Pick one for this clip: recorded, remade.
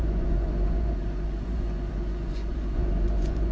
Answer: remade